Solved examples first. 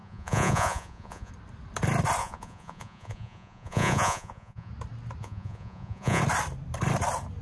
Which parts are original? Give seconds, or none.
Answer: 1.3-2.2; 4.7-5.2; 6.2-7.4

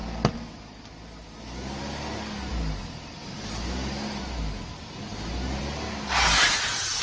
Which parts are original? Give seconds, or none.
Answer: 0.0-7.0

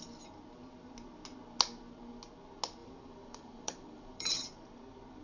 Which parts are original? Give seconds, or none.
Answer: 0.0-2.8; 4.5-5.2

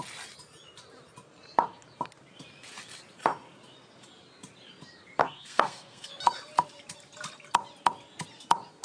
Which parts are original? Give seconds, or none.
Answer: 0.0-5.2; 6.1-8.8

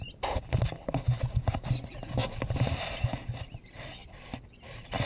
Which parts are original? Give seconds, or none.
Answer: 0.0-2.2; 2.8-4.0; 4.5-5.1

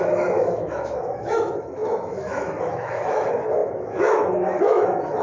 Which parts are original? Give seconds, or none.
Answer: none